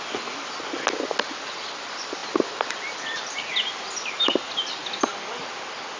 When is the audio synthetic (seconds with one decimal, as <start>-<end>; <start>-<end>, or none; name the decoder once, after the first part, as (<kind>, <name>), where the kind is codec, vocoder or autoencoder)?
none